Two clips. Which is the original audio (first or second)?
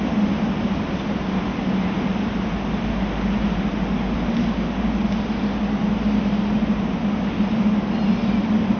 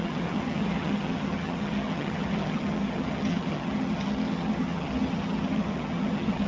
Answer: first